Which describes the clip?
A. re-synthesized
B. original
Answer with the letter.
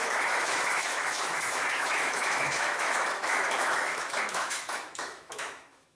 A